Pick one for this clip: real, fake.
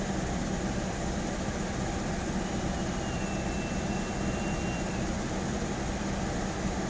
real